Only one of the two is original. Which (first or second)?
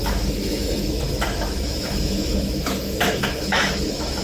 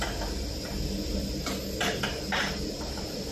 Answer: second